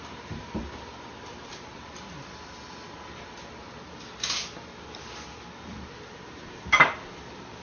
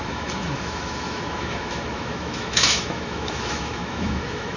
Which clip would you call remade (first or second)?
second